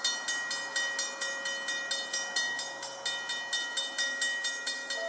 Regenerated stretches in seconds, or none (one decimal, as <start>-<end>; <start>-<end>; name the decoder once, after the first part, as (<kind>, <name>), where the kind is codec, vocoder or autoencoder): none